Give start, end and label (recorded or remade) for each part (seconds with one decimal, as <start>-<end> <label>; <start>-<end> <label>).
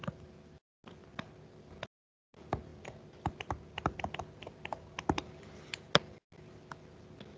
0.0-7.4 recorded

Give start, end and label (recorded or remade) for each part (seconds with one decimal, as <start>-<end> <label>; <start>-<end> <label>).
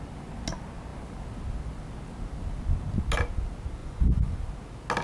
0.0-3.8 recorded; 3.8-4.4 remade; 4.4-5.0 recorded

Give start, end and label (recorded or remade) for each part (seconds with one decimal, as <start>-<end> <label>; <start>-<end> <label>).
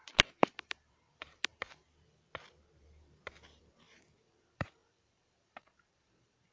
0.0-1.8 remade; 1.8-3.6 recorded; 3.6-6.5 remade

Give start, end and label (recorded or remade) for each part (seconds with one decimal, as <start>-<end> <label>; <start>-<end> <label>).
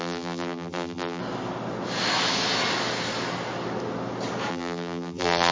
0.0-1.2 remade; 1.2-4.5 recorded; 4.5-5.5 remade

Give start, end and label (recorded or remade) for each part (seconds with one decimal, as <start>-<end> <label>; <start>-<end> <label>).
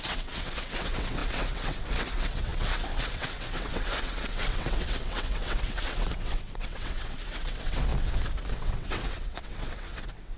0.0-7.9 remade; 7.9-8.5 recorded; 8.5-10.4 remade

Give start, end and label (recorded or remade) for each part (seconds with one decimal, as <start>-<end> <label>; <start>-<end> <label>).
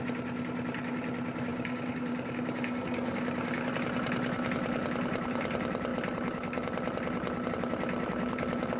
0.0-1.5 recorded; 1.5-3.7 remade; 3.7-8.8 recorded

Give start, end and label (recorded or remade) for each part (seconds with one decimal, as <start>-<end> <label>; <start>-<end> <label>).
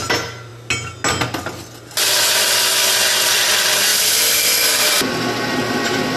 0.0-6.2 recorded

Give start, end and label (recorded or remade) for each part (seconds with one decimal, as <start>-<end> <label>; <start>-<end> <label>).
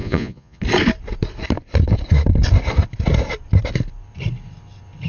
0.0-0.6 remade; 0.6-5.1 recorded